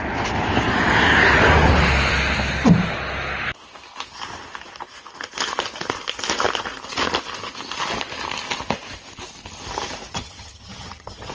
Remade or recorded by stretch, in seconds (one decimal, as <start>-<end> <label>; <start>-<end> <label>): 0.0-10.1 recorded; 10.1-11.3 remade